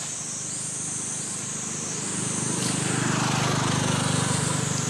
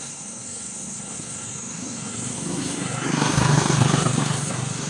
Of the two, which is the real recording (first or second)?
first